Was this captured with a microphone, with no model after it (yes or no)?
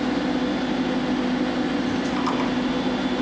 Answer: yes